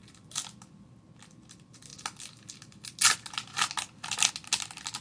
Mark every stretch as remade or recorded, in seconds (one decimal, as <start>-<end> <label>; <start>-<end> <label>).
0.0-5.0 recorded